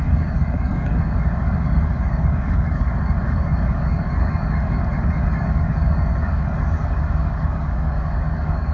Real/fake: fake